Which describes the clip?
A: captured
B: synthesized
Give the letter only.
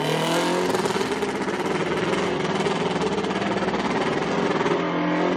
A